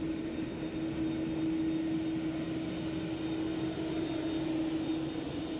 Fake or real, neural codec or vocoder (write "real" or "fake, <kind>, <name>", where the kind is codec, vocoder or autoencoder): real